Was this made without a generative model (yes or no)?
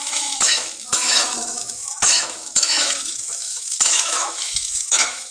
no